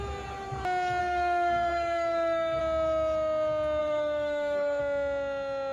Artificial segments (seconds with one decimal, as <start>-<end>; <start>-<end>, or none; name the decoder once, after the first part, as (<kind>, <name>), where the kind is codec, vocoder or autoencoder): 1.0-2.6 (codec, SNAC); 3.8-4.8